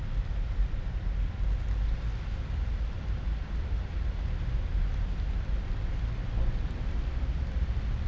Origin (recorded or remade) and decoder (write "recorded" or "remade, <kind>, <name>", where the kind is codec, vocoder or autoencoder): recorded